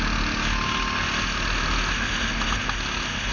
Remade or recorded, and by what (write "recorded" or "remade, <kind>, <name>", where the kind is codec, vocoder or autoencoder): recorded